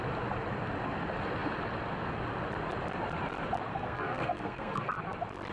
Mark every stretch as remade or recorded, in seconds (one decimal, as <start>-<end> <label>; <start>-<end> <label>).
0.0-3.7 recorded; 3.7-4.9 remade; 4.9-5.5 recorded